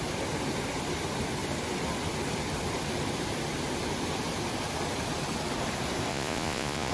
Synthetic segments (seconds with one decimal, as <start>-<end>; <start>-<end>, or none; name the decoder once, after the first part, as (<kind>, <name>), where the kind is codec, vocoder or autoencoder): 6.1-6.9 (vocoder, Vocos)